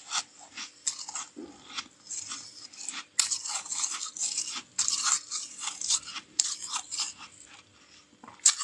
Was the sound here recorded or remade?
recorded